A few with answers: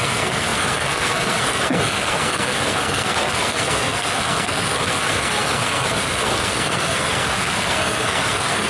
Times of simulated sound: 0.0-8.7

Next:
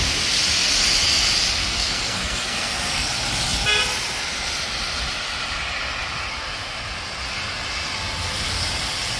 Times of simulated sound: 1.6-3.1

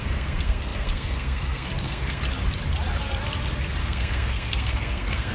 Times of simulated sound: 0.0-2.2; 3.8-5.3

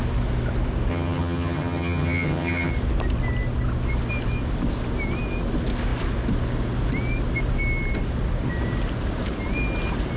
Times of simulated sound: 0.9-2.7